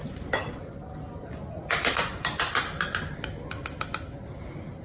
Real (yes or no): yes